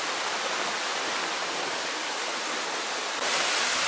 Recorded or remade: recorded